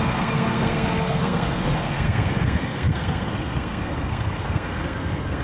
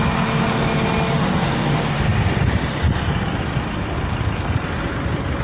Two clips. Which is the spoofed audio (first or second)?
first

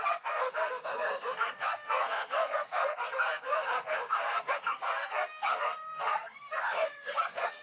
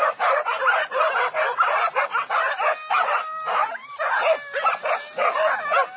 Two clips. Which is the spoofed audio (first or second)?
first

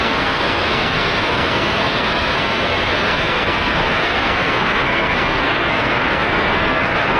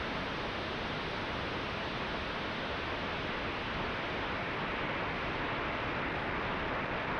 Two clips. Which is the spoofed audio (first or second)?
first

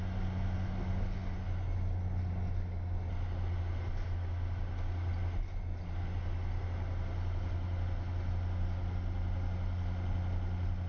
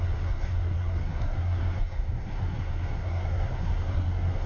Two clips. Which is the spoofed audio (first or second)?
second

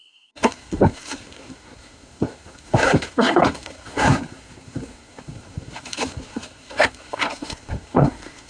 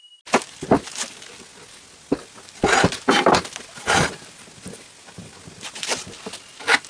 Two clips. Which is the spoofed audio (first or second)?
first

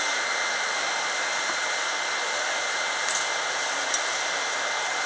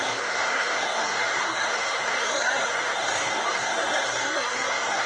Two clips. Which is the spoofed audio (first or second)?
second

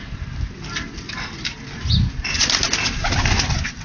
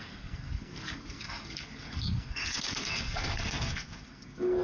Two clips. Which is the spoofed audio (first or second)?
second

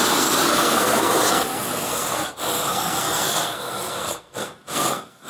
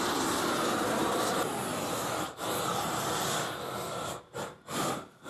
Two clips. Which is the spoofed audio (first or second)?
first